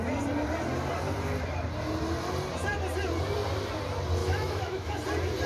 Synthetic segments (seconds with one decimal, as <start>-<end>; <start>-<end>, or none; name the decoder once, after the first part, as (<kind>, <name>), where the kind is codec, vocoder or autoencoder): 4.2-4.9 (autoencoder, DAC-VAE)